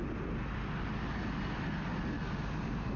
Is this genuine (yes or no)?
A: yes